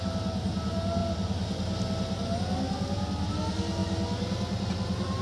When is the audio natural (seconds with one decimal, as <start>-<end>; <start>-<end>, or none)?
0.0-5.2